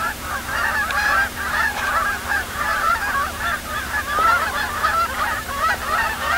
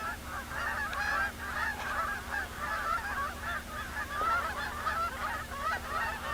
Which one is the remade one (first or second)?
first